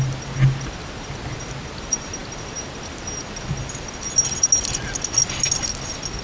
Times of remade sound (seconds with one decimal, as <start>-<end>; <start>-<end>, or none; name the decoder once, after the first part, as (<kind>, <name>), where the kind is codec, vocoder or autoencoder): none

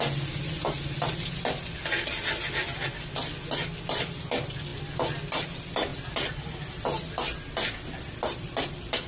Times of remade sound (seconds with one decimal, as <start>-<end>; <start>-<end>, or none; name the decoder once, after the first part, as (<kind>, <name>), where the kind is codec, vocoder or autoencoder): 5.9-9.1 (vocoder, BigVGAN v2)

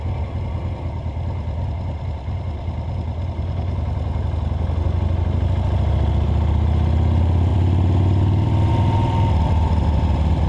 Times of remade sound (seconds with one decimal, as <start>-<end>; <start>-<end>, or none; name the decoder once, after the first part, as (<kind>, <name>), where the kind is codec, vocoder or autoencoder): 7.5-8.7 (vocoder, BigVGAN v2)

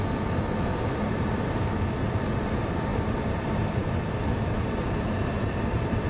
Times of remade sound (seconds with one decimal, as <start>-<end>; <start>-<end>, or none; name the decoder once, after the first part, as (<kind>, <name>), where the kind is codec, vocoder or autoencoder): 0.7-1.7 (vocoder, BigVGAN v2); 2.9-6.1

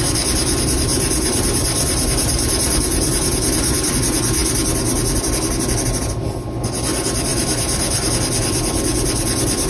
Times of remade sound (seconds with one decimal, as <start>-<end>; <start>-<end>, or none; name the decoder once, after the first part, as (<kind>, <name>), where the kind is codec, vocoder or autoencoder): 0.9-3.9 (vocoder, BigVGAN v2); 7.3-8.1

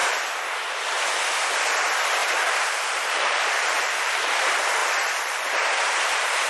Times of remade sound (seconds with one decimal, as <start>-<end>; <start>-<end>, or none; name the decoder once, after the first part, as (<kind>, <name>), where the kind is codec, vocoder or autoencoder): 0.0-1.0 (vocoder, BigVGAN v2); 2.2-4.3